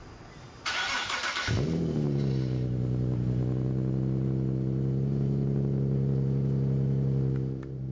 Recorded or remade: remade